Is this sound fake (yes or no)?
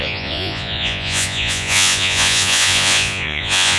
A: yes